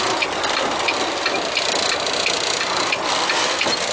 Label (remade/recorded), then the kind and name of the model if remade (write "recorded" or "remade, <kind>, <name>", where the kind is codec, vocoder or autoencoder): recorded